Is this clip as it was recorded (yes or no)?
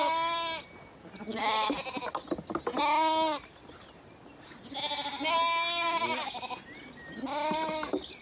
yes